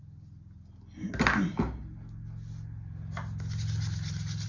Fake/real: real